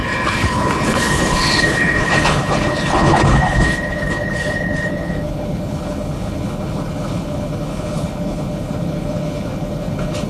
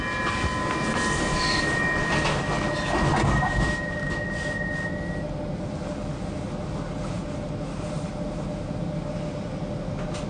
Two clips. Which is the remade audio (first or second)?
first